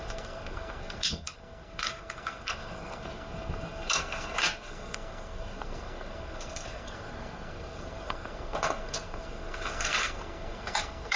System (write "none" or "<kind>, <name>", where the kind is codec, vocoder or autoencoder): codec, SNAC